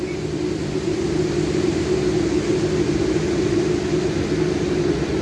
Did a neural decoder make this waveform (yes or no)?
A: no